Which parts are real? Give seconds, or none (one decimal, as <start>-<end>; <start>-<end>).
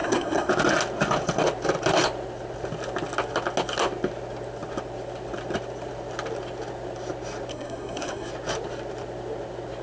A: 0.5-7.5; 8.3-9.8